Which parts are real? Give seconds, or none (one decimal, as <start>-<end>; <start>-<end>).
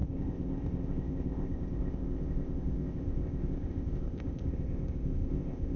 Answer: none